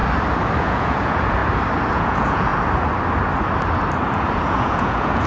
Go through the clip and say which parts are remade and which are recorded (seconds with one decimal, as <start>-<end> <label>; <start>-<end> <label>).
0.0-0.6 recorded; 0.6-1.4 remade; 1.4-1.9 recorded; 1.9-2.5 remade; 2.5-4.1 recorded; 4.1-5.3 remade

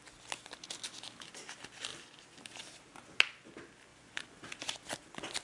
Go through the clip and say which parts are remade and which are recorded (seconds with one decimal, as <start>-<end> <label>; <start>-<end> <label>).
0.0-3.9 recorded; 3.9-4.4 remade; 4.4-5.4 recorded

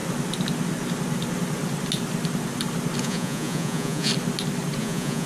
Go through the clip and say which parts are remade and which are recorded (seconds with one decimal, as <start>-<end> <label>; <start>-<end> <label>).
0.0-3.0 recorded; 3.0-4.1 remade; 4.1-4.8 recorded; 4.8-5.3 remade

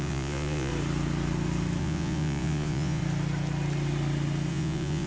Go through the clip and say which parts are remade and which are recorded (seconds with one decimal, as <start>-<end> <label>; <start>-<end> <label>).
0.0-0.7 remade; 0.7-1.8 recorded; 1.8-3.0 remade; 3.0-4.5 recorded; 4.5-5.1 remade

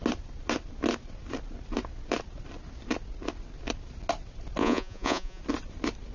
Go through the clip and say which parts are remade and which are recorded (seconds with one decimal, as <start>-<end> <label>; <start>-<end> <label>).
0.0-4.6 recorded; 4.6-5.4 remade; 5.4-6.1 recorded

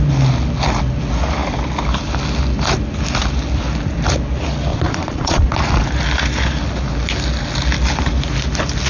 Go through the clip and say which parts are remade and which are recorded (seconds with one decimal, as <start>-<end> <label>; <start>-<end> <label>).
0.0-4.7 recorded; 4.7-5.5 remade; 5.5-8.9 recorded